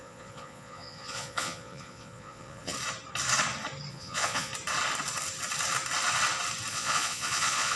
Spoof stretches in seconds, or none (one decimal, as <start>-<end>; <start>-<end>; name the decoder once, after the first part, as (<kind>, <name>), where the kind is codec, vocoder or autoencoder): 0.0-2.7 (vocoder, Vocos); 3.9-4.5; 6.7-7.8